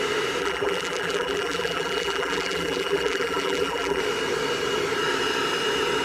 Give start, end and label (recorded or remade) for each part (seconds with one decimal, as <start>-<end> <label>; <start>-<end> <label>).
0.0-0.4 recorded; 0.4-4.0 remade; 4.0-6.0 recorded